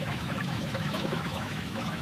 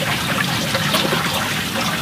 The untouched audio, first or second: second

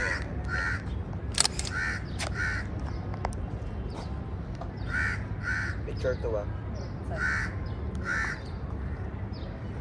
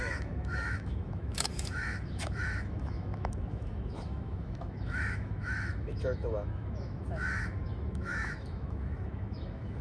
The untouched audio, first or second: first